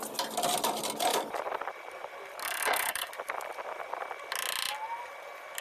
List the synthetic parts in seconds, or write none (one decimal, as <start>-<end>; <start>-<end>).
2.4-3.1